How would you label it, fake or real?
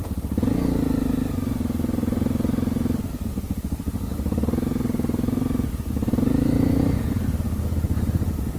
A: real